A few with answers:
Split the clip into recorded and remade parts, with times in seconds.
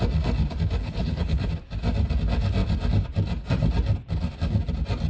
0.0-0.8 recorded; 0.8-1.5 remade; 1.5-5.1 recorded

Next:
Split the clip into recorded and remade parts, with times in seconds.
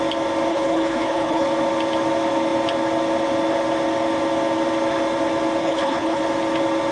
0.0-0.5 recorded; 0.5-1.5 remade; 1.5-5.6 recorded; 5.6-6.2 remade; 6.2-6.9 recorded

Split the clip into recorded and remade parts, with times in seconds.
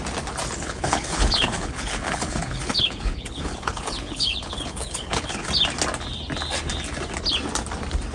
0.0-0.6 recorded; 0.6-5.5 remade; 5.5-8.1 recorded